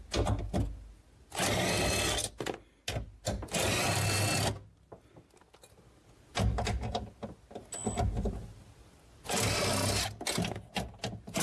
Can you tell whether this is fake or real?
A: real